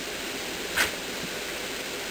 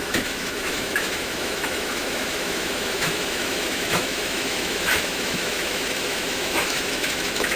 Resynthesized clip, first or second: second